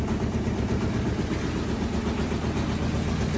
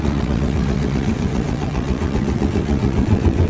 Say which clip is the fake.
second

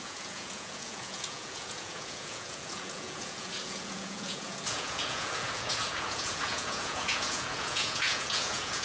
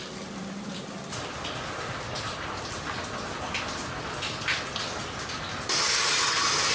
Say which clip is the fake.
first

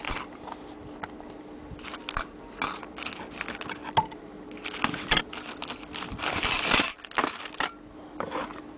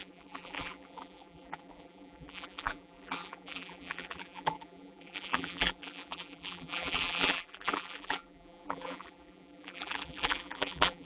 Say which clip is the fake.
second